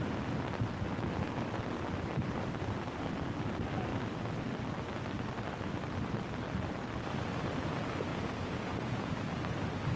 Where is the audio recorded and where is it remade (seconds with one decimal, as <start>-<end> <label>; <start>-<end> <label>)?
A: 0.0-8.1 recorded; 8.1-9.1 remade; 9.1-10.0 recorded